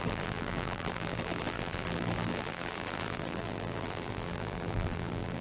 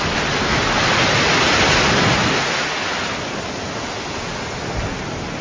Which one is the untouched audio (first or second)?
second